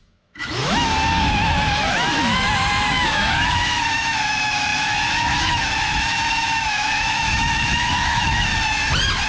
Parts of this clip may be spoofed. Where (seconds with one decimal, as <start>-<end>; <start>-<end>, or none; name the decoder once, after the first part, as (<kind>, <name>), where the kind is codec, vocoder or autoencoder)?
0.0-0.9 (autoencoder, DAC-VAE); 2.9-8.5